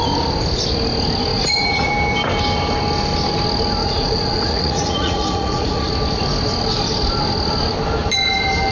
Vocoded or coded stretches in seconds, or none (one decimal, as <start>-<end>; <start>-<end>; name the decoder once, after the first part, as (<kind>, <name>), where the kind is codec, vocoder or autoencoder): 1.3-1.9 (vocoder, Vocos); 3.8-5.9